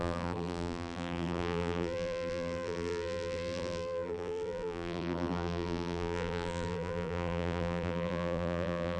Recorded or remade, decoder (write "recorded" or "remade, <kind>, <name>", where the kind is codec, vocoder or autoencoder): remade, vocoder, BigVGAN v2